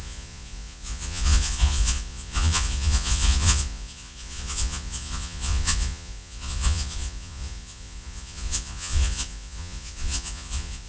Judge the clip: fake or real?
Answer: fake